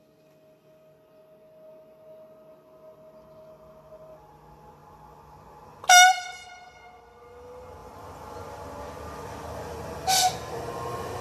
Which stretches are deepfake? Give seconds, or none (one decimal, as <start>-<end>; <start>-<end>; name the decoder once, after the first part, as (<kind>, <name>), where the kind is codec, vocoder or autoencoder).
7.8-8.5 (vocoder, BigVGAN v2)